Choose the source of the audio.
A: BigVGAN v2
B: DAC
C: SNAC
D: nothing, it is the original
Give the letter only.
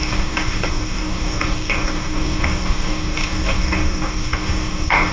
B